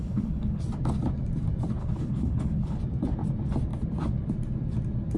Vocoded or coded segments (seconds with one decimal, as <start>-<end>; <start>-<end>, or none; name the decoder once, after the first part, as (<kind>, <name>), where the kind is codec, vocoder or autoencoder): 0.0-0.6 (codec, HILCodec); 1.8-2.8